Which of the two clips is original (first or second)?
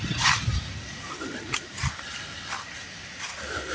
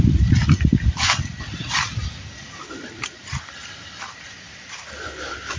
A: first